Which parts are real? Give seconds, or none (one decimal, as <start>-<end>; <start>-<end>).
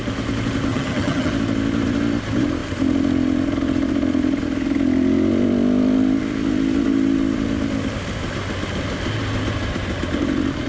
0.0-0.7; 1.3-10.7